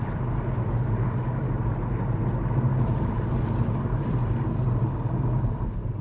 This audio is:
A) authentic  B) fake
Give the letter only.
A